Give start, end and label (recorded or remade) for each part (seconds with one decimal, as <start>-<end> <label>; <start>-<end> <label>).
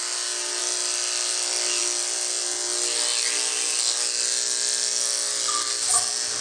0.0-6.4 recorded